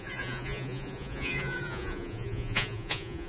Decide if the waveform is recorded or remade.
remade